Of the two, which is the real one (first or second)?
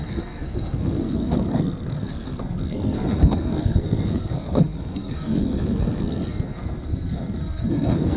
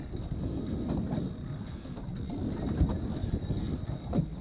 second